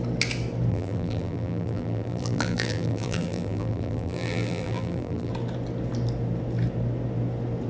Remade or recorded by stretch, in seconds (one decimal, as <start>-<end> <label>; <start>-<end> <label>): 0.0-0.7 recorded; 0.7-5.3 remade; 5.3-7.7 recorded